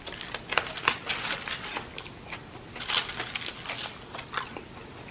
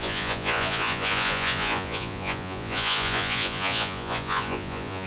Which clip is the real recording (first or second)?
first